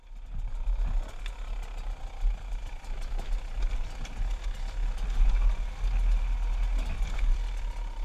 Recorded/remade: recorded